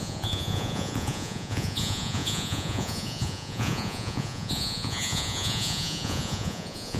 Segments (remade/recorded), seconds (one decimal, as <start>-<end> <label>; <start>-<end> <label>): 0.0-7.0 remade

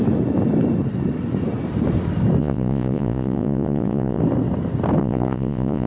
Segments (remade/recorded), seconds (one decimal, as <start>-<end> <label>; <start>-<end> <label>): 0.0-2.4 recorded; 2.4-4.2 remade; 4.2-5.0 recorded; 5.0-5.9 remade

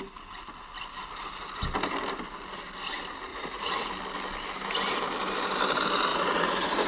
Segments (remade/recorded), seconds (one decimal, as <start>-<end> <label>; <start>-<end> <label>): 0.0-3.3 recorded; 3.3-3.9 remade; 3.9-6.1 recorded; 6.1-6.9 remade

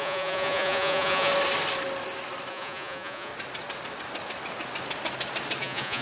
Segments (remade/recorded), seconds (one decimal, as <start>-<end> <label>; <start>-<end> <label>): 0.0-1.3 remade; 1.3-2.5 recorded; 2.5-3.3 remade; 3.3-5.6 recorded; 5.6-6.0 remade